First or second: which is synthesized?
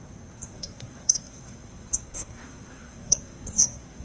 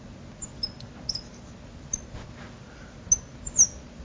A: first